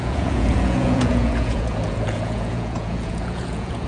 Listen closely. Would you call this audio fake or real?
fake